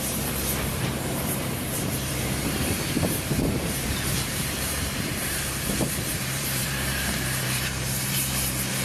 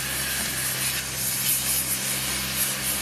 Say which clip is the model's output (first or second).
first